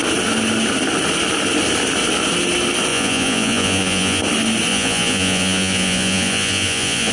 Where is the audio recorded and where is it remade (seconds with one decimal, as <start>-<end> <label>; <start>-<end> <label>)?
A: 0.0-2.9 recorded; 2.9-4.2 remade; 4.2-4.7 recorded; 4.7-7.1 remade